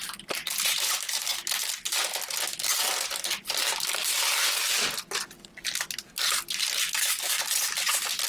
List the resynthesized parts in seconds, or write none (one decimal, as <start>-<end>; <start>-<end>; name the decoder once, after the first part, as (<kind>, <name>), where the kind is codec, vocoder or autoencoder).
6.8-7.4 (codec, DAC)